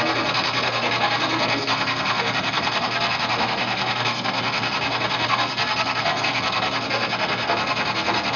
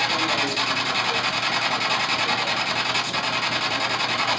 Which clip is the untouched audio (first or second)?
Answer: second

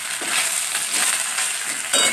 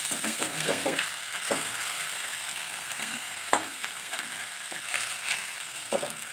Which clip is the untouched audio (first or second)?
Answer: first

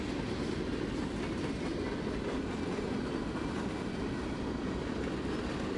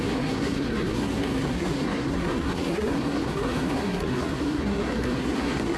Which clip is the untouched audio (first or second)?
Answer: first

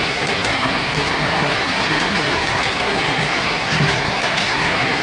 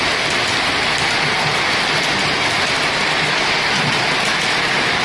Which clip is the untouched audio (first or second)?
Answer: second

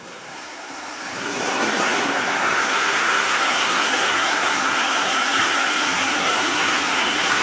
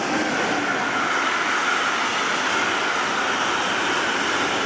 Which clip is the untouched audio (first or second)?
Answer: second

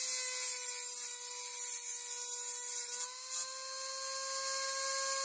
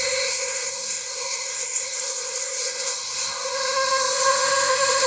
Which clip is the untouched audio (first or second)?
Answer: first